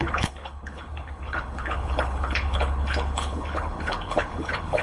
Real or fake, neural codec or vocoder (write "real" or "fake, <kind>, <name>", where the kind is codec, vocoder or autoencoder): fake, codec, HILCodec